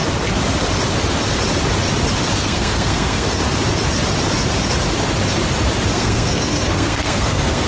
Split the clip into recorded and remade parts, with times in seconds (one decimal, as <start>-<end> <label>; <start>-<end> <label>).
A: 0.0-2.4 recorded; 2.4-3.4 remade; 3.4-5.9 recorded; 5.9-7.7 remade